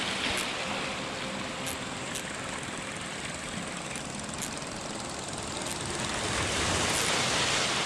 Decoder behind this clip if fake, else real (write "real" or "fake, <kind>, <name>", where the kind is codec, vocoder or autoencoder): real